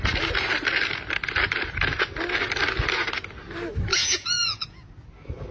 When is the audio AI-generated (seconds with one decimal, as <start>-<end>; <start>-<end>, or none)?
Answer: 3.9-4.9